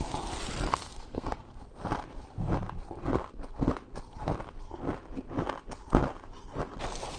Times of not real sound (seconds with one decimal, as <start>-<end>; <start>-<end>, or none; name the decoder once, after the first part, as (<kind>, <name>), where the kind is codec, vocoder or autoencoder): 0.7-1.6 (codec, SNAC)